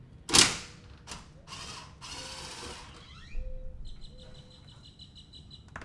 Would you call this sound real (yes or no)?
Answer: yes